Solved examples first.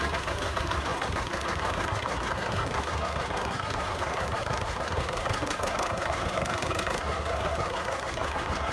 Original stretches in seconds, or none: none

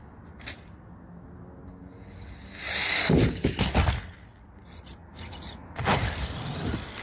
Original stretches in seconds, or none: 0.0-7.0

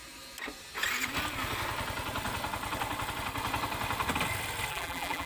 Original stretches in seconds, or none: 0.0-4.7

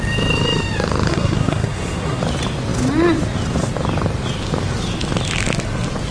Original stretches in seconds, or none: 0.0-1.1; 2.2-6.1